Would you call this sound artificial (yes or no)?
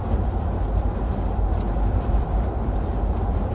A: yes